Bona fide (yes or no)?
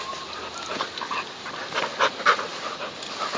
yes